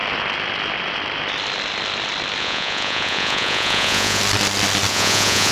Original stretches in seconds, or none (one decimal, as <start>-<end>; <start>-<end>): 0.0-2.4; 4.2-4.9